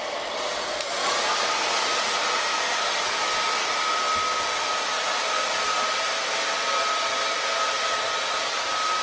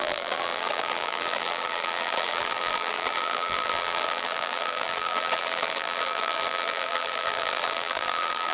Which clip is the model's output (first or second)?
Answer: second